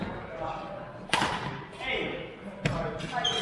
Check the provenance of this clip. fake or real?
real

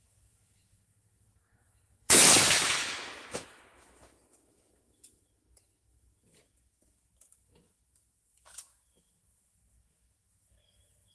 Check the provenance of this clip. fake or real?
fake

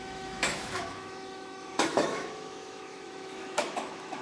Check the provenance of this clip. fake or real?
fake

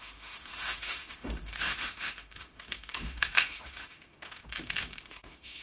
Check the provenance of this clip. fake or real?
fake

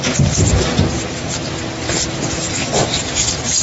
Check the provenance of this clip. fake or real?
real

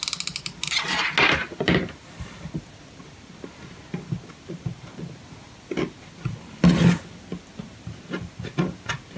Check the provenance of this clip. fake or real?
real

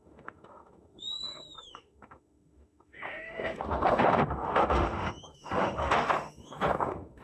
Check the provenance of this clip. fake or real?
fake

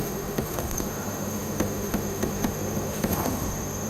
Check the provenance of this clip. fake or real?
fake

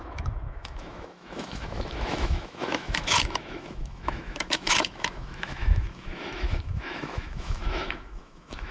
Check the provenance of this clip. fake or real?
fake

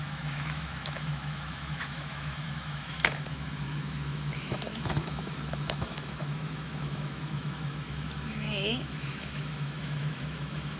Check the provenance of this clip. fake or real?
fake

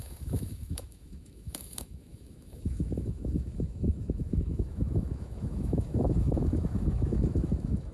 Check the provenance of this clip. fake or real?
fake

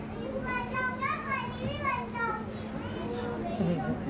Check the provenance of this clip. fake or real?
real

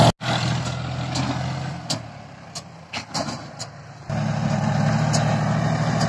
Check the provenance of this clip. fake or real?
real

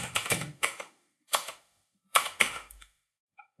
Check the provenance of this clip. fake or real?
fake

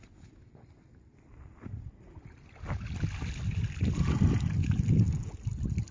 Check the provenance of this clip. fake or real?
real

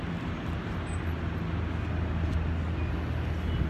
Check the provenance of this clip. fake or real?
real